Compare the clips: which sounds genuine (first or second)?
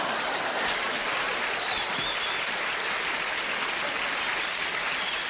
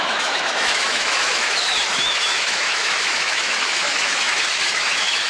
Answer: first